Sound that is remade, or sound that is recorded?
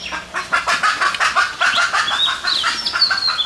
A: recorded